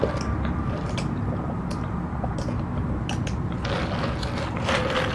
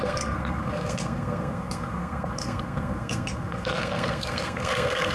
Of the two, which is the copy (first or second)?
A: second